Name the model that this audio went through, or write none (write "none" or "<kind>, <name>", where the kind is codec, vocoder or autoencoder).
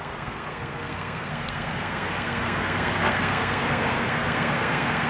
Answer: codec, SNAC